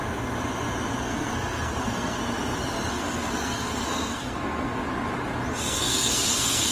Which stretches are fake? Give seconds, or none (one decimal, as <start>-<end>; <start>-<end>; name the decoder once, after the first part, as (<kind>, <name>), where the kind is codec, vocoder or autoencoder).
1.0-2.2 (codec, SNAC); 2.9-4.8; 5.5-6.7